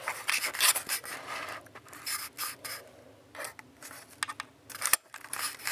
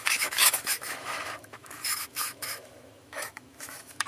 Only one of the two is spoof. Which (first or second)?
second